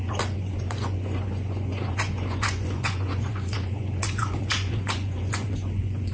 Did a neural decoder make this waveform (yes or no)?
yes